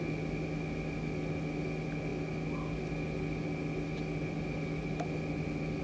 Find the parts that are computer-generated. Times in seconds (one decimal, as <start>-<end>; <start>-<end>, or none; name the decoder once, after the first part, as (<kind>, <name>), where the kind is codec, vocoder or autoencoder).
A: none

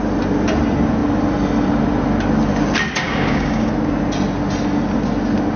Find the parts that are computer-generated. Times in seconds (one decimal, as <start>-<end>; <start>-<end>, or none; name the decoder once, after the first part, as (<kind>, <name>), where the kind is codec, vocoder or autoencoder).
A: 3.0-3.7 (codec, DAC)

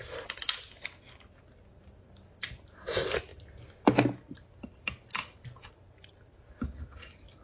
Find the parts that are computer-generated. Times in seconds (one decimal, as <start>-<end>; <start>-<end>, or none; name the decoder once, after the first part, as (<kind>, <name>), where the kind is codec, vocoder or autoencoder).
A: none

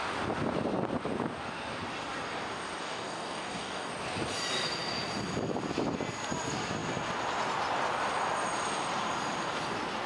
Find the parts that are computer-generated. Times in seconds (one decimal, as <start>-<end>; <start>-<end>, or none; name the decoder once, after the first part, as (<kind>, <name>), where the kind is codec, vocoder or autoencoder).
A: 2.8-3.9 (codec, DAC)

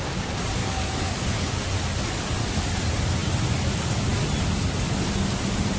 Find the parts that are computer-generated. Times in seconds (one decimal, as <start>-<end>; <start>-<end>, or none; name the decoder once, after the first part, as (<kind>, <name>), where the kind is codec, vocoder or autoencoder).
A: 0.6-1.6 (codec, DAC)

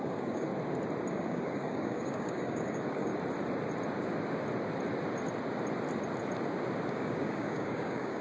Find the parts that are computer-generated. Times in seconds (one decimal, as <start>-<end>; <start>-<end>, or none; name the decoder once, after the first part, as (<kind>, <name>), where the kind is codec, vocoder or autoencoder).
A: 0.0-0.5 (codec, DAC); 1.1-3.1; 6.9-8.2

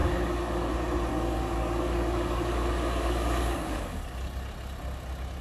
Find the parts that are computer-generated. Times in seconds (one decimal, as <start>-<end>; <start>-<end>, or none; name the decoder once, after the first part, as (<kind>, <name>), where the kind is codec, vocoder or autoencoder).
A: 0.0-0.7 (codec, DAC); 1.1-4.0